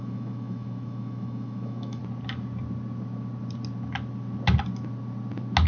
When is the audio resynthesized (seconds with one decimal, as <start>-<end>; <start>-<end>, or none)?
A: 0.0-2.0